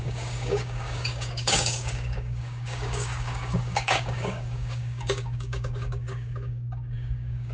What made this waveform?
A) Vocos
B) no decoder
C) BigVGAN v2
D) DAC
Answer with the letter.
D